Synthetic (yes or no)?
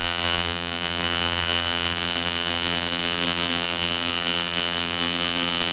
yes